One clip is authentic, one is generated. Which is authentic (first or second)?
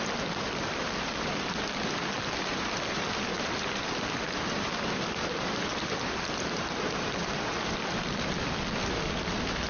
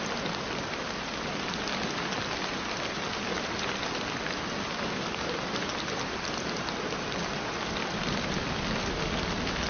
second